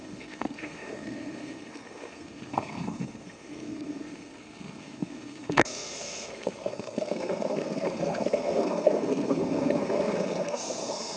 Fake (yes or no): yes